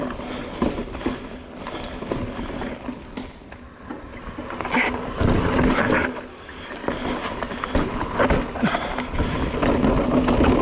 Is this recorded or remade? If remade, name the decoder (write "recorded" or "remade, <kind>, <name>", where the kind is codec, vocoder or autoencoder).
recorded